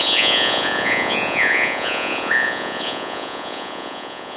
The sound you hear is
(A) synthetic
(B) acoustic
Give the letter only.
A